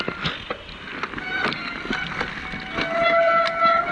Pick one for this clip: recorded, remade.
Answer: recorded